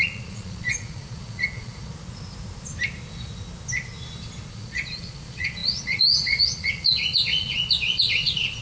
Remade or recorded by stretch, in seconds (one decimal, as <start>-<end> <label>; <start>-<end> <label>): 0.0-1.9 remade; 1.9-4.5 recorded; 4.5-8.6 remade